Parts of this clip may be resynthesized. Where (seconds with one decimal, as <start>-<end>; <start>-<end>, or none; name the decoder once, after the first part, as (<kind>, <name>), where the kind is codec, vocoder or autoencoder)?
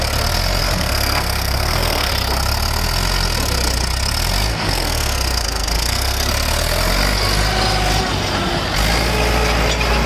0.6-2.1 (codec, SNAC); 4.5-6.3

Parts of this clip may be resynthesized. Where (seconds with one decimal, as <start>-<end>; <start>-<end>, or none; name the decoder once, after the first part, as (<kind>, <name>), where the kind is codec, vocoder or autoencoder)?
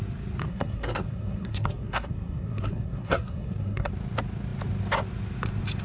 0.4-3.9 (codec, SNAC)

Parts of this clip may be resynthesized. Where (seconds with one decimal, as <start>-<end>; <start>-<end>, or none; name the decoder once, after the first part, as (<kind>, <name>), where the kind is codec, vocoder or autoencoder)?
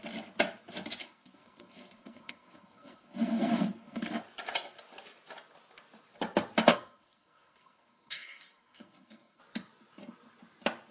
1.0-4.2 (codec, SNAC); 6.7-9.4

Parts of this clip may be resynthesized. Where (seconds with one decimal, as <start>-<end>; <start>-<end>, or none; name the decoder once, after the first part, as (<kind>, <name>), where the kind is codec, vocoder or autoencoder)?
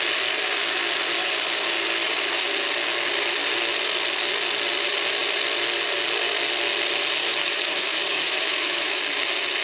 7.2-9.0 (autoencoder, DAC-VAE)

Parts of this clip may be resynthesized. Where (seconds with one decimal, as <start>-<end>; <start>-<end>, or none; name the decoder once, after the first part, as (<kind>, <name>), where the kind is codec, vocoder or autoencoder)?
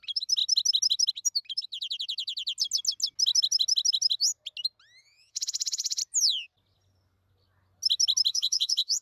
5.0-6.0 (vocoder, Vocos); 8.3-9.0